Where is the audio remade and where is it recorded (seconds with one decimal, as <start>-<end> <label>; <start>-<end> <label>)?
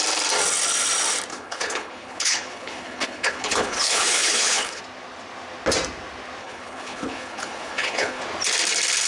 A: 0.0-1.3 recorded; 1.3-4.8 remade; 4.8-6.4 recorded; 6.4-8.2 remade; 8.2-9.1 recorded